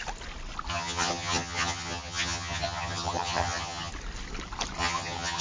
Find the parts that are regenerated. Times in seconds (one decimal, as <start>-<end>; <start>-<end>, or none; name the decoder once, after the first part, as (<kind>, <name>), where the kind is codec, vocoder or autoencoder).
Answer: 0.7-3.9 (vocoder, HiFi-GAN); 4.8-5.4